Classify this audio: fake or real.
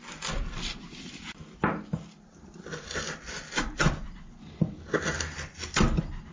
real